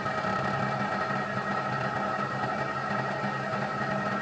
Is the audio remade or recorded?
recorded